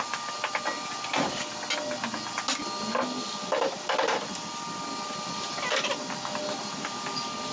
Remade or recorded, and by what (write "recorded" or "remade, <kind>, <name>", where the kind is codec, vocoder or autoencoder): recorded